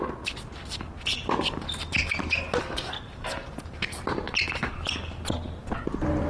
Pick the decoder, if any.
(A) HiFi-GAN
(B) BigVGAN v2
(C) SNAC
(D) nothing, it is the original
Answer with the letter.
D